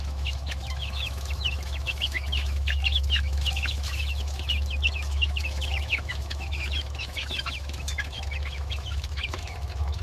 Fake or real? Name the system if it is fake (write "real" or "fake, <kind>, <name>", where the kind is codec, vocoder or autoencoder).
fake, autoencoder, DAC-VAE